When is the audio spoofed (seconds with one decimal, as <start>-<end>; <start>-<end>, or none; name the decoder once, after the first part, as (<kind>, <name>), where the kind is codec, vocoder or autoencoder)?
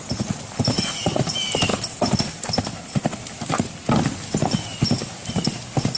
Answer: none